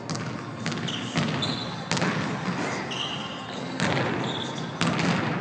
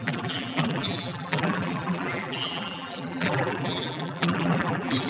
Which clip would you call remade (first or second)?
second